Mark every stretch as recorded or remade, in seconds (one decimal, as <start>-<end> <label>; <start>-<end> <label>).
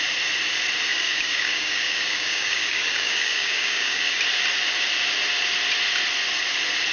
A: 0.0-0.9 recorded; 0.9-4.2 remade; 4.2-6.9 recorded